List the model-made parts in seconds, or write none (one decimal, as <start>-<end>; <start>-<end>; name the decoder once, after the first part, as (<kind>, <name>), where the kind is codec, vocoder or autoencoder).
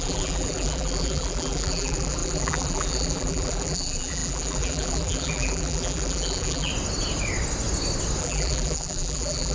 0.0-6.7 (vocoder, BigVGAN v2); 8.2-9.5